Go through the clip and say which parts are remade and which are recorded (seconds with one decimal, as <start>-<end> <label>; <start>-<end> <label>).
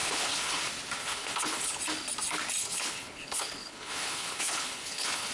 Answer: 0.0-0.6 remade; 0.6-1.0 recorded; 1.0-1.8 remade; 1.8-2.6 recorded; 2.6-5.3 remade